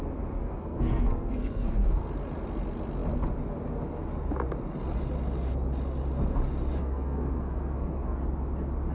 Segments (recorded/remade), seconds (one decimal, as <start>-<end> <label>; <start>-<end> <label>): 0.0-0.4 recorded; 0.4-2.0 remade; 2.0-6.8 recorded; 6.8-8.2 remade; 8.2-8.9 recorded